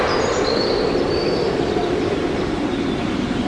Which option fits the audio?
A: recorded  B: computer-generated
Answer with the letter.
A